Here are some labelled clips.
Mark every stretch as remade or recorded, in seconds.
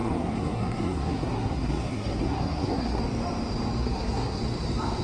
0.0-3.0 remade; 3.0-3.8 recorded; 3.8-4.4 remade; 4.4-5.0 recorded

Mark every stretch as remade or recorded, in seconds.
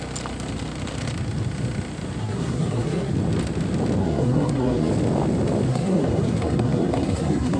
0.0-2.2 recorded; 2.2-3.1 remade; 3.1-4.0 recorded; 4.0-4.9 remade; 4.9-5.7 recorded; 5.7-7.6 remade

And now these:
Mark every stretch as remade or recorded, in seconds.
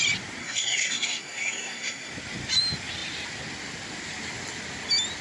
0.0-0.4 recorded; 0.4-2.1 remade; 2.1-5.2 recorded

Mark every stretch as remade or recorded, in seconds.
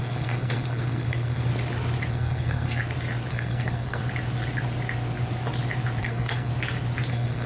0.0-1.5 remade; 1.5-2.1 recorded; 2.1-2.8 remade; 2.8-3.3 recorded; 3.3-4.0 remade; 4.0-6.0 recorded; 6.0-6.5 remade; 6.5-7.1 recorded; 7.1-7.5 remade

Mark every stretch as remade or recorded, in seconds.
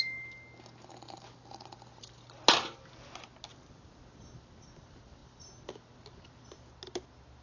0.0-7.4 recorded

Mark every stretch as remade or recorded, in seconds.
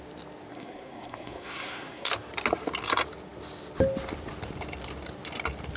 0.0-0.5 recorded; 0.5-2.1 remade; 2.1-5.8 recorded